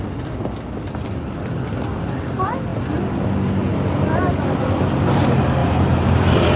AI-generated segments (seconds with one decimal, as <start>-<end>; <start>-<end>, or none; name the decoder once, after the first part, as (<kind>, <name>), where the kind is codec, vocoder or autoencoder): 5.6-6.6 (vocoder, BigVGAN v2)